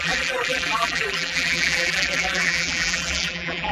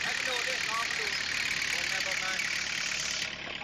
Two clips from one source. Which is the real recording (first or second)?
second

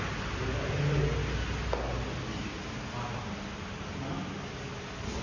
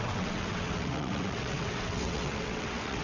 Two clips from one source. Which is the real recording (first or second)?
first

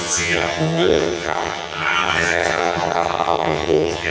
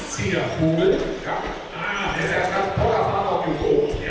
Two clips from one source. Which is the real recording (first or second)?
second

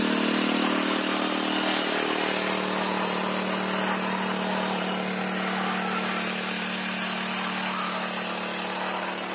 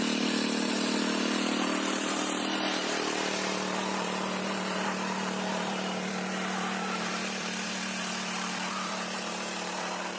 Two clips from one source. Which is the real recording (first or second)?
first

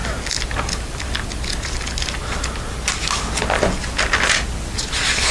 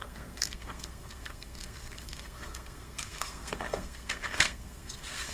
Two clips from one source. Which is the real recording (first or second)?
first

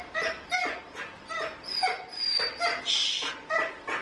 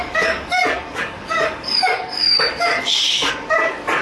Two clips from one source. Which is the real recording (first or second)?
first